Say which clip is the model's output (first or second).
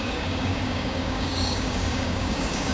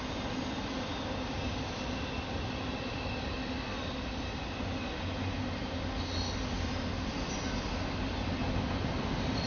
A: first